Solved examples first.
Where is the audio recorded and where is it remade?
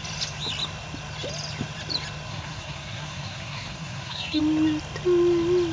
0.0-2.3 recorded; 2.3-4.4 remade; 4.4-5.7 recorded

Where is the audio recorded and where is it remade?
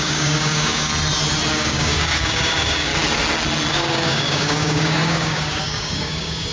0.0-0.9 remade; 0.9-1.5 recorded; 1.5-2.9 remade; 2.9-3.7 recorded; 3.7-6.5 remade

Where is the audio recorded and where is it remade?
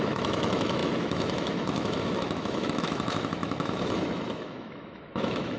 0.0-5.6 remade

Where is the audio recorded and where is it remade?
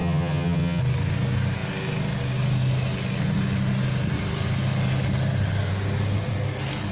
0.0-0.8 remade; 0.8-6.9 recorded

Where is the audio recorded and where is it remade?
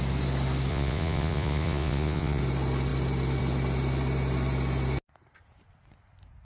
0.0-0.7 recorded; 0.7-2.4 remade; 2.4-6.4 recorded